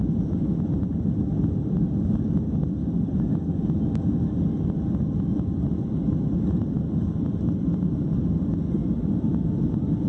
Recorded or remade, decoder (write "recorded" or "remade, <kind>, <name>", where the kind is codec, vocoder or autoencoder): remade, vocoder, BigVGAN v2